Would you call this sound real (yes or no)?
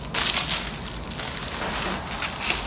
yes